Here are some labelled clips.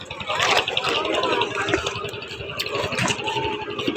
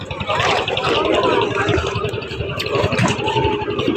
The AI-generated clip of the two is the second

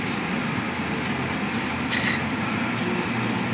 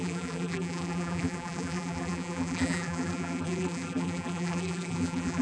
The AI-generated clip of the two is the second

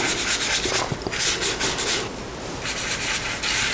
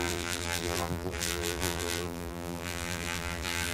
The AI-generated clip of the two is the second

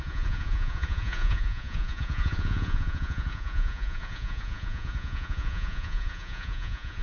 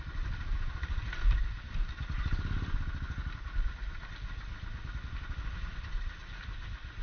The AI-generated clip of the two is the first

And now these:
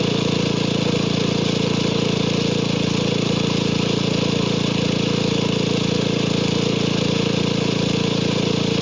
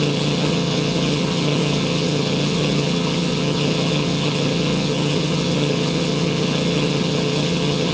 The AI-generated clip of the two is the second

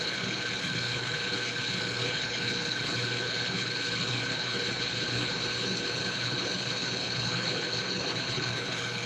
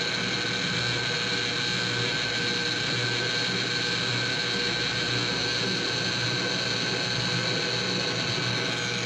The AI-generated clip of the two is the first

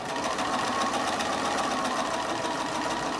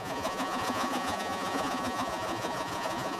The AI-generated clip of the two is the second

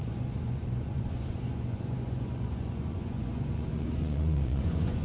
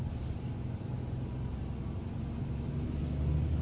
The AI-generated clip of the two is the first